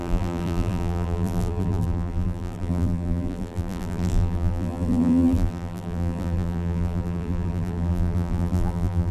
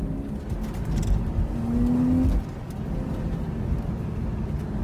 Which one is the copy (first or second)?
first